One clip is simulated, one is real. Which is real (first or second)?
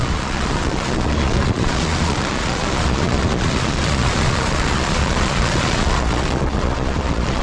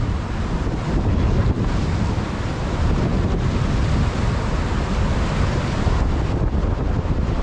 second